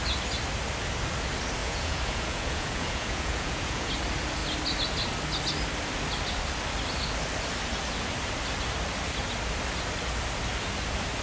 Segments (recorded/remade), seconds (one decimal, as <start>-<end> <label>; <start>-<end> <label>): 0.0-1.6 recorded; 1.6-3.9 remade; 3.9-11.2 recorded